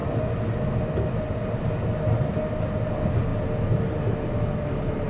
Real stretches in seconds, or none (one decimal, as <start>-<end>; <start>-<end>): 0.0-5.1